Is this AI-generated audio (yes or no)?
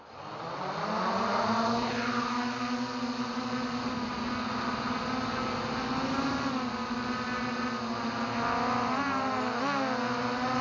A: no